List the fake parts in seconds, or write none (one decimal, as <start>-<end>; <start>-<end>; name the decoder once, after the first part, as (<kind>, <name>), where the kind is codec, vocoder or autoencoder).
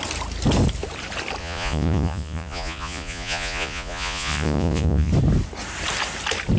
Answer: 1.4-5.1 (vocoder, Vocos)